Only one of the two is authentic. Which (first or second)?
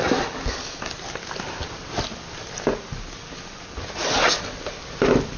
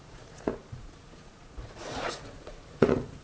first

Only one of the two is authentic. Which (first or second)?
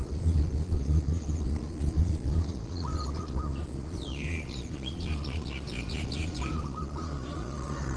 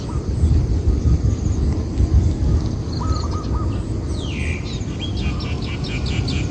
second